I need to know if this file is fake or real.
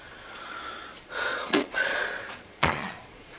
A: fake